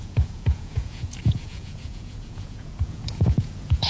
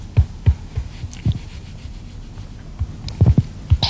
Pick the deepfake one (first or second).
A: first